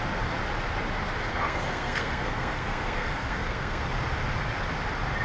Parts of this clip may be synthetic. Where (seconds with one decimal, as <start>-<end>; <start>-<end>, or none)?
1.3-3.8